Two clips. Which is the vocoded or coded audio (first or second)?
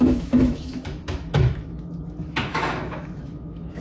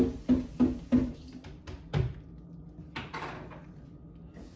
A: first